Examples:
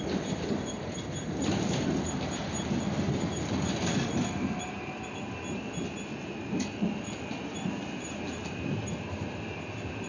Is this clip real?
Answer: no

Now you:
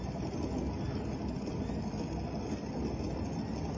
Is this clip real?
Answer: yes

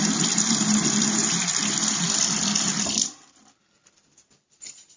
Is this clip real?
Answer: no